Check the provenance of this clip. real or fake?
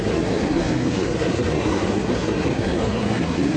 fake